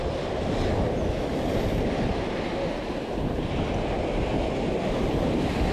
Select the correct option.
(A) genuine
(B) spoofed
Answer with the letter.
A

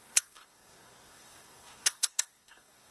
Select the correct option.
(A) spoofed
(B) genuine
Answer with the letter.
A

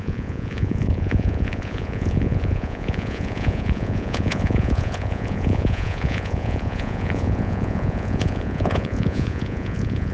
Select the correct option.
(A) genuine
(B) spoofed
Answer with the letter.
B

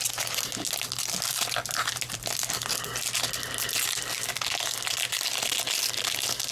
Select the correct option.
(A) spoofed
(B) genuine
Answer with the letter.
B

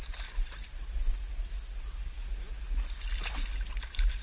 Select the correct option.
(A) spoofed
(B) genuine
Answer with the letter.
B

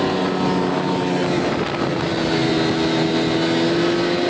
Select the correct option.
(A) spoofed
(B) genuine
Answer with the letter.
B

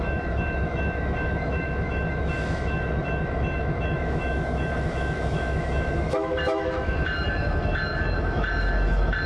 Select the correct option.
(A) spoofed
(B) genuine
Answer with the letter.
A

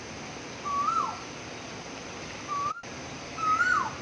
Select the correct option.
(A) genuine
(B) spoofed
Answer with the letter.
A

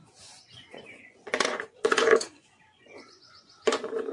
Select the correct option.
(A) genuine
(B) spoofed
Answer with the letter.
B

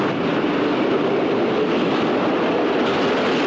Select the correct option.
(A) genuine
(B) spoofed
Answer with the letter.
A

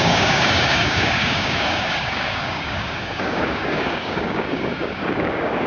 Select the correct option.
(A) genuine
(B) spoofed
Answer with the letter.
B